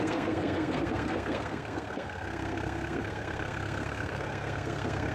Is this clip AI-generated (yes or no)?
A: yes